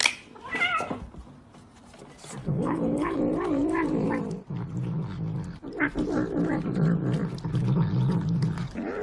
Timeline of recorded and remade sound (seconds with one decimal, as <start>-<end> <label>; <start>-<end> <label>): 0.0-2.4 recorded; 2.4-3.2 remade; 3.2-9.0 recorded